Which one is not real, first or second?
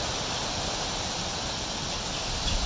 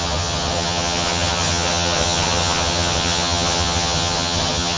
second